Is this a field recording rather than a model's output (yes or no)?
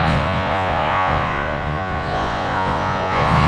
no